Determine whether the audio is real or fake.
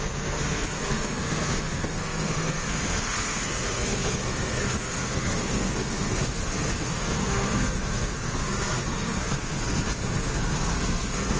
fake